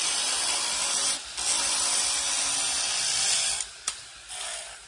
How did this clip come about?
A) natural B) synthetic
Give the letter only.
A